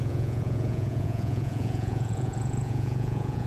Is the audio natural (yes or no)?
no